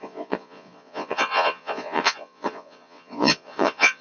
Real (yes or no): no